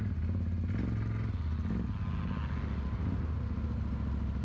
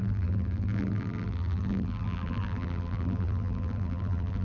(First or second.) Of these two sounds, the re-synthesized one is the second